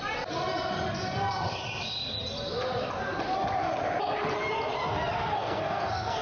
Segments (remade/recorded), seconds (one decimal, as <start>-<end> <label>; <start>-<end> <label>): 0.0-5.3 recorded; 5.3-6.2 remade